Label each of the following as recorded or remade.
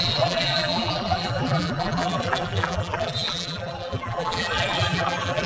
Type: remade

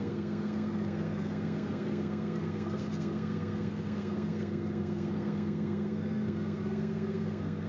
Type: remade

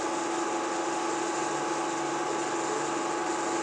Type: recorded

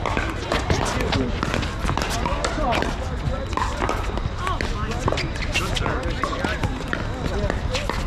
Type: recorded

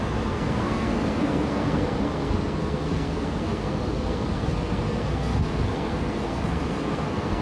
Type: remade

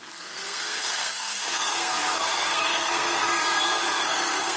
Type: remade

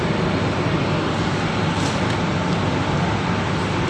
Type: recorded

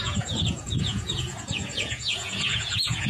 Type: remade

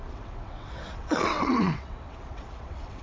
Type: remade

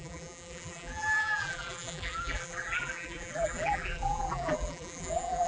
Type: remade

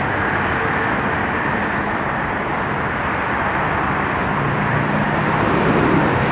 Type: recorded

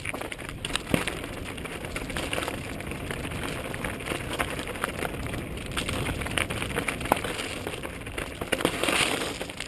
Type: recorded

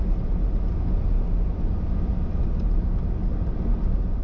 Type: recorded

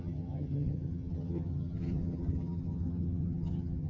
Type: remade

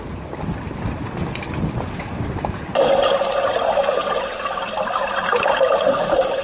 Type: recorded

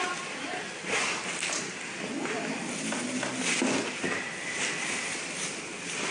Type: recorded